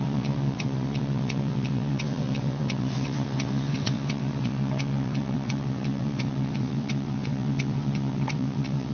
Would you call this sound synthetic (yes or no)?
yes